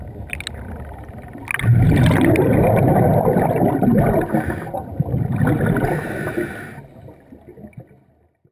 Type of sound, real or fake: real